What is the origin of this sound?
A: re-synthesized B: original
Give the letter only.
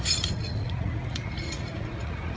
A